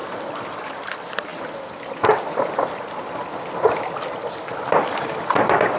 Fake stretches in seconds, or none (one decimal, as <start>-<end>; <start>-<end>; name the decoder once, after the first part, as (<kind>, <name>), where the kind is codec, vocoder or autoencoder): 0.0-1.3 (vocoder, BigVGAN v2); 2.7-3.2; 4.7-5.8